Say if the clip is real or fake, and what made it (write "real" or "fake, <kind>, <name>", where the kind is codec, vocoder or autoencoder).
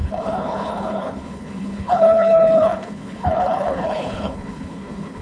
fake, codec, HILCodec